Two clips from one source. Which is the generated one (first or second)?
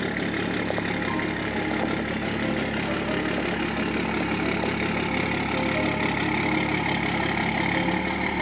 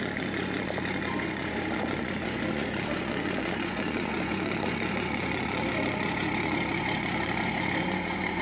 second